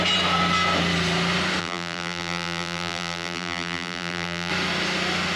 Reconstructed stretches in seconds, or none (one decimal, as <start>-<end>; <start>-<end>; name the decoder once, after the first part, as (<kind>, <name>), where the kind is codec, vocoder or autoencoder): 1.6-4.5 (vocoder, BigVGAN v2)